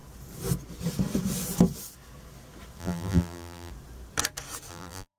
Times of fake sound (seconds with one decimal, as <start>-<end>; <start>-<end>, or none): 2.8-3.7; 4.7-5.2